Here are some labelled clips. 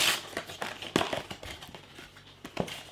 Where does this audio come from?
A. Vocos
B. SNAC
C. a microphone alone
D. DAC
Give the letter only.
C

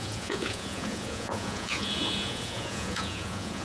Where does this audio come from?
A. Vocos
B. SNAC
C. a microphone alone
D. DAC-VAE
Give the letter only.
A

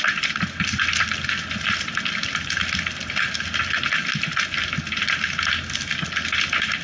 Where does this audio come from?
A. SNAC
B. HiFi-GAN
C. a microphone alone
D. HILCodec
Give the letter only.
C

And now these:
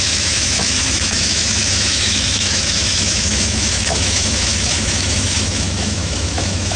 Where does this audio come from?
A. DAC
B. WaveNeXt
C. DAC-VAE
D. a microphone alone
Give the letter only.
C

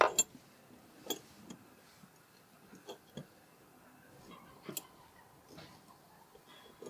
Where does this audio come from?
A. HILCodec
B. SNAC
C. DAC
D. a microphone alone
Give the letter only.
D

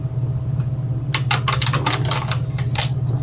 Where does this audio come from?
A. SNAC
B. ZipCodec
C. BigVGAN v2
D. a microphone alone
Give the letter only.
D